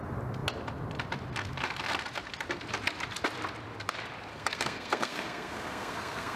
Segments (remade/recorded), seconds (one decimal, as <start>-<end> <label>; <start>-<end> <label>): 0.0-4.3 recorded; 4.3-6.4 remade